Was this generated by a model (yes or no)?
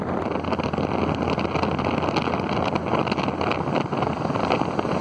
no